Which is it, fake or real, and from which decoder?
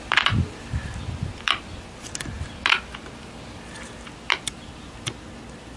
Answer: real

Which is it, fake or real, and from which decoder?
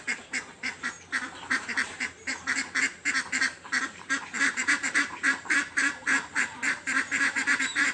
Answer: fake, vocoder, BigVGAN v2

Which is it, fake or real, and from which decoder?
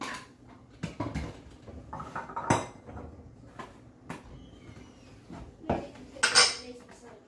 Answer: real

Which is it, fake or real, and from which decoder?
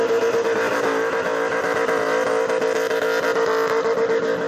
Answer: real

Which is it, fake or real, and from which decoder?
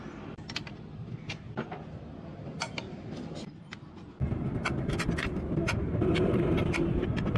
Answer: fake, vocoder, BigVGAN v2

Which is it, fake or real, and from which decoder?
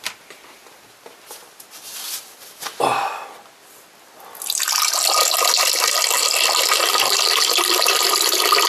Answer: real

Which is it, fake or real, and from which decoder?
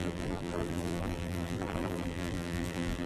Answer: fake, vocoder, BigVGAN v2